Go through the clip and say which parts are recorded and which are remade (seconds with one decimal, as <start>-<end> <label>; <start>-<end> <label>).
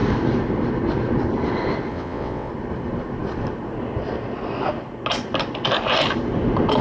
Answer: 0.0-1.9 recorded; 1.9-2.5 remade; 2.5-6.8 recorded